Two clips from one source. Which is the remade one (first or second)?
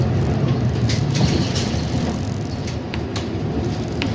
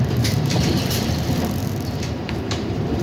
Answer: second